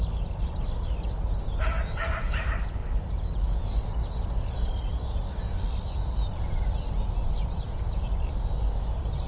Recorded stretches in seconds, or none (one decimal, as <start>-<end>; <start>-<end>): 0.0-9.3